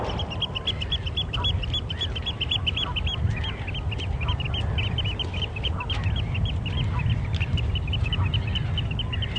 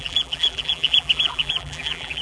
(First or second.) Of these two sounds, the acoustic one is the first